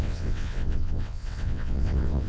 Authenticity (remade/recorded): remade